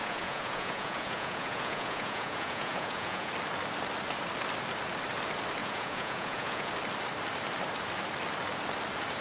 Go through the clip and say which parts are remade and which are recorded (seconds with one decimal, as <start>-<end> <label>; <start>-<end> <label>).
0.0-3.3 remade; 3.3-5.6 recorded; 5.6-6.7 remade; 6.7-9.2 recorded